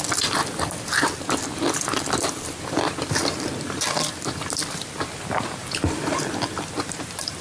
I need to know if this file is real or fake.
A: fake